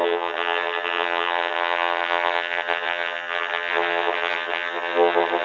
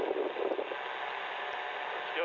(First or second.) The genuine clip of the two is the second